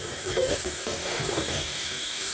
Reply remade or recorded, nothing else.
remade